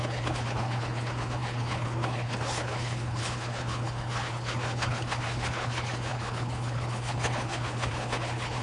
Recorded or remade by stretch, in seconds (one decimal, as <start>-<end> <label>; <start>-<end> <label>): 0.0-8.6 remade